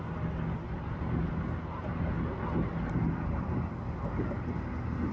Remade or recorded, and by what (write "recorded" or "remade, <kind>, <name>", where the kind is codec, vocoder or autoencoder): recorded